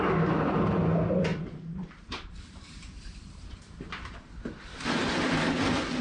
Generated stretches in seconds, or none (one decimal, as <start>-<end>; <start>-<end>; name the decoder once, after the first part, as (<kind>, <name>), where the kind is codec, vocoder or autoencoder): 1.3-4.2 (vocoder, BigVGAN v2)